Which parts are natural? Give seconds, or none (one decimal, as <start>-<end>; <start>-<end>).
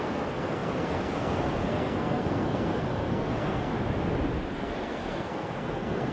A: 3.7-4.5